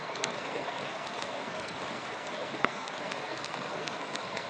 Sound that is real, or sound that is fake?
fake